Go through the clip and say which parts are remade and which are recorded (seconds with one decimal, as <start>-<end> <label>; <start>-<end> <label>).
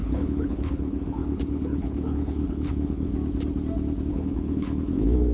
0.0-3.1 remade; 3.1-4.1 recorded; 4.1-5.3 remade